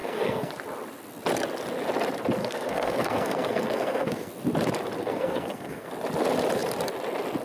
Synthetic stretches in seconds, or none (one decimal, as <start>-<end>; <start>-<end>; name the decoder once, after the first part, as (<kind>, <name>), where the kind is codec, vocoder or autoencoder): 0.0-0.5 (codec, SNAC); 2.4-4.3; 5.0-5.9